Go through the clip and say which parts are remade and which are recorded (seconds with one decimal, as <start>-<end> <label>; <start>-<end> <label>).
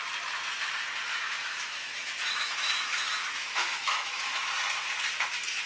0.0-1.1 recorded; 1.1-4.5 remade; 4.5-5.7 recorded